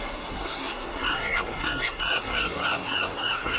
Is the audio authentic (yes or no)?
no